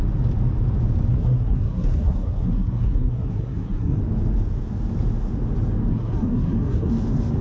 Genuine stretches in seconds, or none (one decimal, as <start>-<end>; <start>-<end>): 0.0-1.1; 4.0-5.9; 6.9-7.4